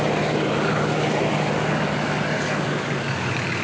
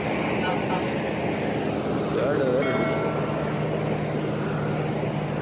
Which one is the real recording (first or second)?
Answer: second